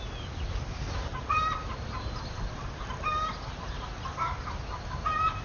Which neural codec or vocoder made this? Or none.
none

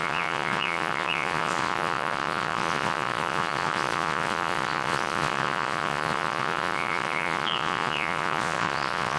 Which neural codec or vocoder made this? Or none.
vocoder, Vocos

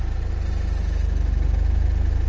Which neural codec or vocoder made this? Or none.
none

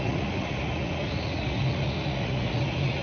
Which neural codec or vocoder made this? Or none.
vocoder, Vocos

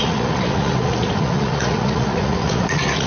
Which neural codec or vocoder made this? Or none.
vocoder, Vocos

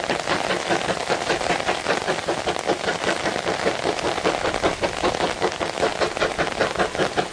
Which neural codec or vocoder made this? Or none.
none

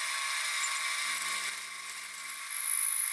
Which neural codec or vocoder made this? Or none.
none